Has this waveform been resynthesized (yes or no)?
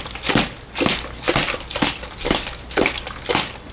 no